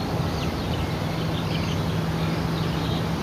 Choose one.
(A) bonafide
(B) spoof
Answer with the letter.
B